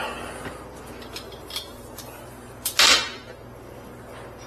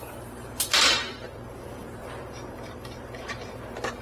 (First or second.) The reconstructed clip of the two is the second